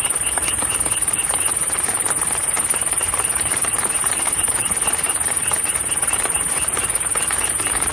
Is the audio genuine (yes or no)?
no